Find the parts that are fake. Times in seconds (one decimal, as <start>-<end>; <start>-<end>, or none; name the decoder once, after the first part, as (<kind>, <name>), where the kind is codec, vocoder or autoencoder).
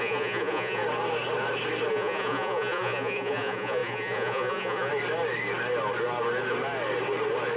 0.0-0.8 (vocoder, Vocos); 1.9-4.9